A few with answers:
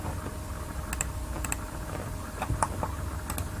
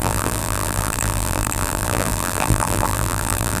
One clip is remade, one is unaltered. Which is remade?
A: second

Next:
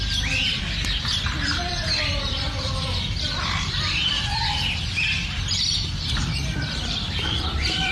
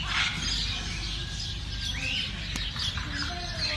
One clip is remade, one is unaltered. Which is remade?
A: first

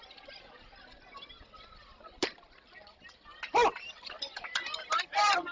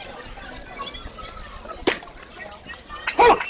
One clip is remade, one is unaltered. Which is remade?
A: first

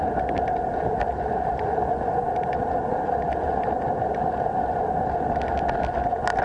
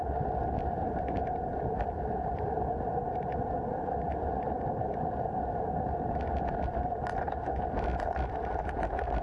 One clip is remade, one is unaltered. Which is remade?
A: second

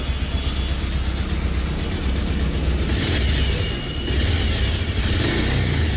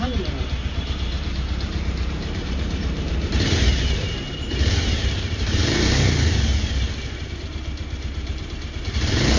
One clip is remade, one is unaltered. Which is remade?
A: second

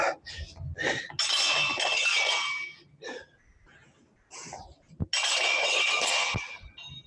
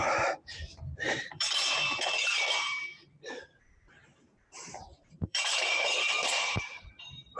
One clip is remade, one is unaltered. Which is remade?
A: second